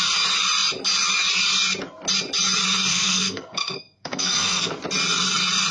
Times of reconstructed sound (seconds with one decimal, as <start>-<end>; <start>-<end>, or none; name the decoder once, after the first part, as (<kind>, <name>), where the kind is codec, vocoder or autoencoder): 2.9-4.7 (codec, SNAC)